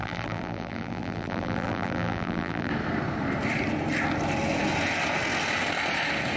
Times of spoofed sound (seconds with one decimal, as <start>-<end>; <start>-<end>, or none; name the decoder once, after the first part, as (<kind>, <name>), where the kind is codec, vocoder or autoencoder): 0.0-2.7 (vocoder, BigVGAN v2)